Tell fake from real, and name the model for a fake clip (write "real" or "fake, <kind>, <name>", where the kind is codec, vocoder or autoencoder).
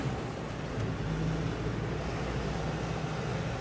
real